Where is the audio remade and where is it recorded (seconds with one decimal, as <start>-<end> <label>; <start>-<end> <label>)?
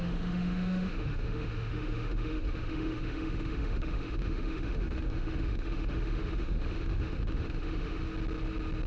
0.0-8.0 remade; 8.0-8.9 recorded